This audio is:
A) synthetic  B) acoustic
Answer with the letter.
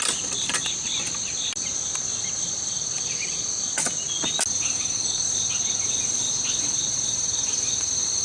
B